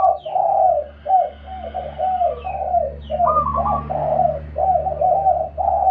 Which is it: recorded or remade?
recorded